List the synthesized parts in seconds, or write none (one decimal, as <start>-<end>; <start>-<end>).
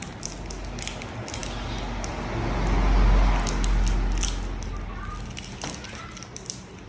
none